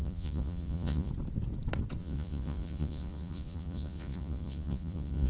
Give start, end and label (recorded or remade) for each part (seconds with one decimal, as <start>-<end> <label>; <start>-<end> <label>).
0.0-1.1 remade; 1.1-2.0 recorded; 2.0-5.3 remade